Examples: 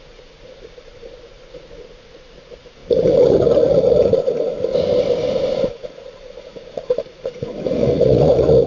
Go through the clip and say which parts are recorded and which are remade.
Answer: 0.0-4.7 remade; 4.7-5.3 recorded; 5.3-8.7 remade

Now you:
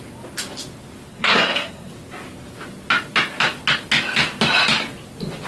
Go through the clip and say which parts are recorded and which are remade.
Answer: 0.0-1.1 recorded; 1.1-1.9 remade; 1.9-5.5 recorded

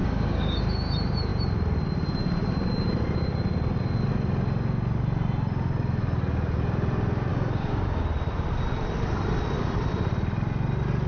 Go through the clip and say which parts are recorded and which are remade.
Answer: 0.0-0.6 remade; 0.6-7.3 recorded; 7.3-8.0 remade; 8.0-11.1 recorded